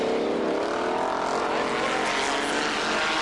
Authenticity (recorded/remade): recorded